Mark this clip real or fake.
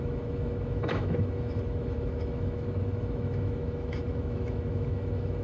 fake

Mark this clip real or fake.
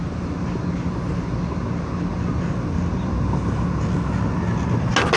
real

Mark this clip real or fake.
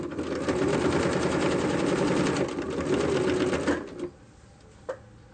real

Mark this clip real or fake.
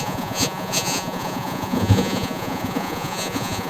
fake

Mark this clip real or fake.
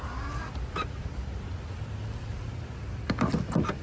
real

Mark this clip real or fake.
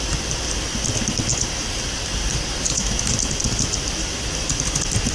real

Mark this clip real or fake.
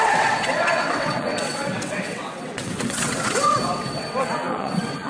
fake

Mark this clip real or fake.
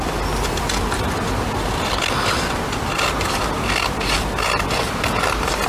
real